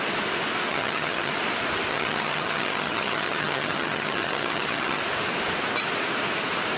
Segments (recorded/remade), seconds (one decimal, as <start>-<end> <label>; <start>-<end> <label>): 0.0-0.7 recorded; 0.7-1.3 remade; 1.3-1.9 recorded; 1.9-5.0 remade; 5.0-6.8 recorded